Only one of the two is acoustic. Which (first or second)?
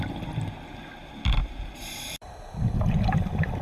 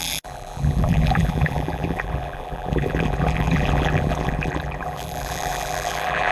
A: first